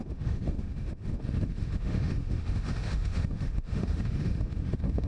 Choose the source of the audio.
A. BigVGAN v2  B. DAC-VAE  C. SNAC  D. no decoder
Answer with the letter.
B